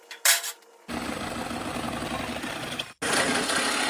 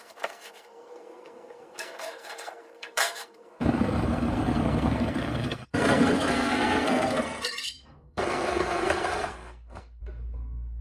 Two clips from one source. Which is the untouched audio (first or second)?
first